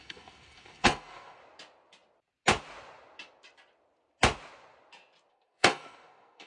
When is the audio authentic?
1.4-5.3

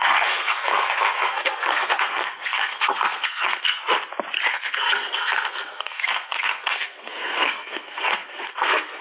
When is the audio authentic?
3.9-4.5

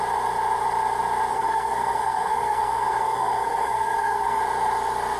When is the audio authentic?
0.0-1.3; 4.4-5.2

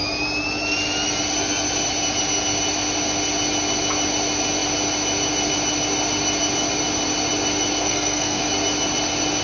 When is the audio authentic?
0.0-7.8; 8.4-9.4